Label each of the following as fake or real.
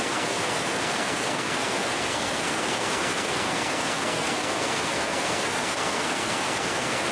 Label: fake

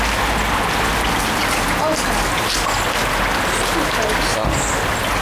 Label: real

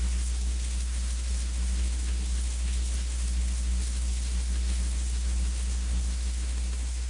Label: fake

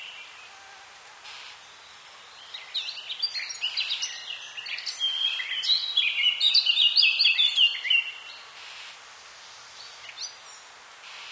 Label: real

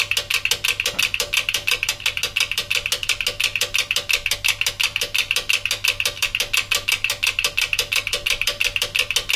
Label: real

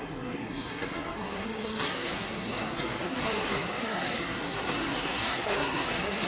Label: fake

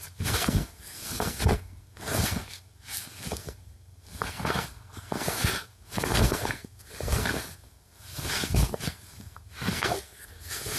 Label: fake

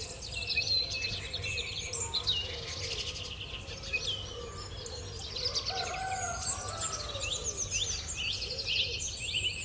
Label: real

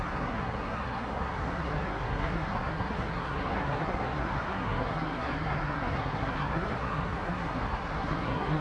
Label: fake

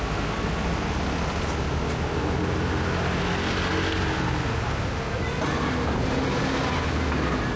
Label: real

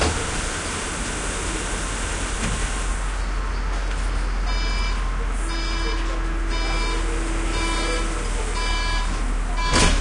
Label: real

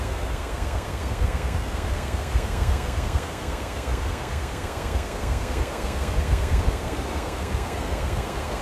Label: fake